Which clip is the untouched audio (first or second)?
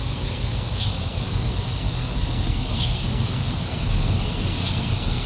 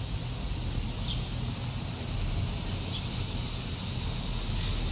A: second